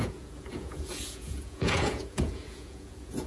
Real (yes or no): no